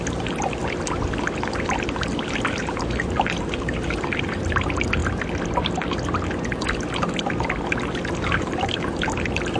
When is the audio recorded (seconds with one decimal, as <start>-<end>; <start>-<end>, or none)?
0.6-2.6; 5.0-8.1

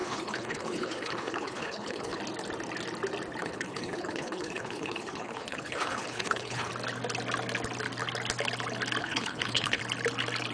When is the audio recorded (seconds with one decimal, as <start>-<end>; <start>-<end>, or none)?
2.2-3.4; 6.7-9.0; 9.8-10.5